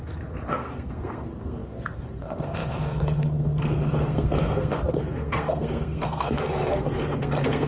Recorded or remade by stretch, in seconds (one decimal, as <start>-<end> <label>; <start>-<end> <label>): 0.0-7.7 remade